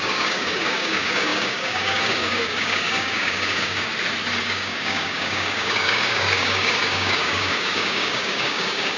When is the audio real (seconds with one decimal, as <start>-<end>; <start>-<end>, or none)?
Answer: 3.9-4.4